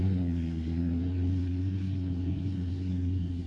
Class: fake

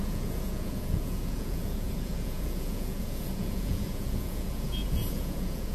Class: fake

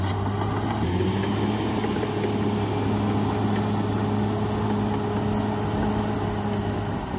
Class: real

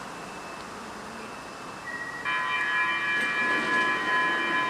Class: real